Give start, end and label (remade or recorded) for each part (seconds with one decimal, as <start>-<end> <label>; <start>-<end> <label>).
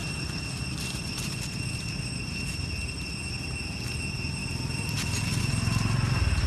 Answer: 0.0-6.5 recorded